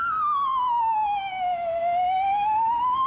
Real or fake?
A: real